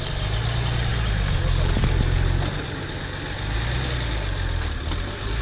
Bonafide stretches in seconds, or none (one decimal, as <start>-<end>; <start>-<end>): 0.0-5.4